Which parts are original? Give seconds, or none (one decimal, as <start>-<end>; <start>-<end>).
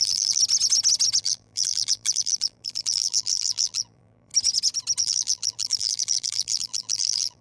0.4-1.2; 4.3-5.0